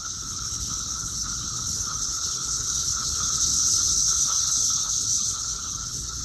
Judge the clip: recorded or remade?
remade